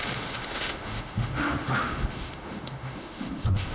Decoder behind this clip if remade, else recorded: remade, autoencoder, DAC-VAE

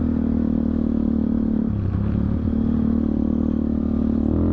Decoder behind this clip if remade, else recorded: recorded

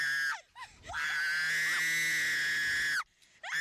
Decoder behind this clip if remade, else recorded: recorded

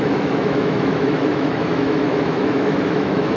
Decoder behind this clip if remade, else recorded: remade, autoencoder, DAC-VAE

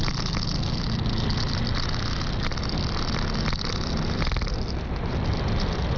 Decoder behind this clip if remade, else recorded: recorded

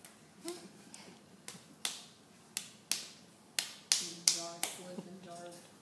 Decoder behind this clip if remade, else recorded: recorded